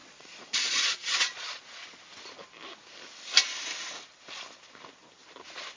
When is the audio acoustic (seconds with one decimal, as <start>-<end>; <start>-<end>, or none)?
2.0-5.8

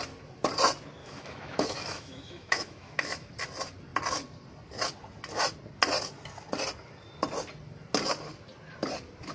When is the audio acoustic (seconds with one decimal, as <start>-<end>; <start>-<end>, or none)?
0.0-1.0; 3.3-9.3